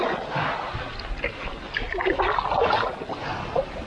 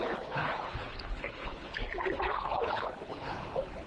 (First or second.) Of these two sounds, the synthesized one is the second